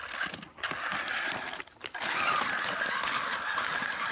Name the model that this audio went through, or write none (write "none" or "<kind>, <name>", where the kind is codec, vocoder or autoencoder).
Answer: none